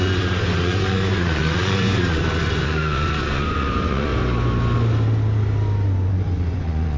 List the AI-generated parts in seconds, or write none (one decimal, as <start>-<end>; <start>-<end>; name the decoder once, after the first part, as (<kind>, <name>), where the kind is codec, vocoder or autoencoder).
0.0-4.1 (vocoder, Vocos); 6.1-7.0